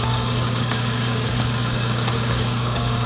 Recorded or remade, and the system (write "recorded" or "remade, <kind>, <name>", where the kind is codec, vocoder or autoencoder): remade, codec, DAC